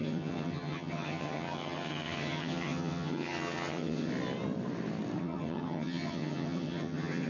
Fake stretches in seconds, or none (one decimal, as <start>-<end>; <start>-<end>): 0.0-4.1; 5.2-7.3